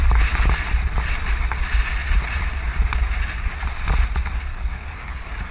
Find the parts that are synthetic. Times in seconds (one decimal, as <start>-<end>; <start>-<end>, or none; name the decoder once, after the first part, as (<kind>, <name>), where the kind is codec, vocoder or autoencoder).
4.5-5.5 (codec, DAC)

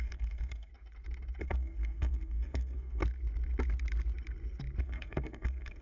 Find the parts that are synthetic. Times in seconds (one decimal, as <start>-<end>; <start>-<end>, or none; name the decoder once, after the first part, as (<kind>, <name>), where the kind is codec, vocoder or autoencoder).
0.0-0.7 (codec, SNAC); 1.4-3.0; 4.8-5.8

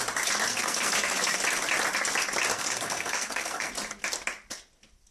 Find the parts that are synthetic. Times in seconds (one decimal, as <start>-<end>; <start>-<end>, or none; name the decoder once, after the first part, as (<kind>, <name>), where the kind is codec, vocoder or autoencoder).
0.5-1.4 (codec, SNAC); 2.5-3.7

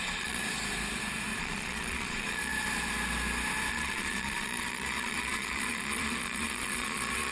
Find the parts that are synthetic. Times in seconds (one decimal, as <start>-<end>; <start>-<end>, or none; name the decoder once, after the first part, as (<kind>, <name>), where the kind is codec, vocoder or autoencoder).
0.0-0.4 (vocoder, Vocos); 1.4-2.5; 3.7-7.3